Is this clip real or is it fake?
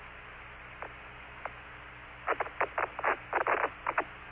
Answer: real